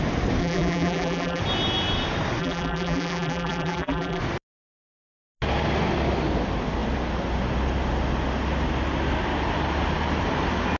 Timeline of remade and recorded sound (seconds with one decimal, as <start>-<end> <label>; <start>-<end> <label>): 0.0-0.4 recorded; 0.4-1.4 remade; 1.4-2.4 recorded; 2.4-4.2 remade; 4.2-10.8 recorded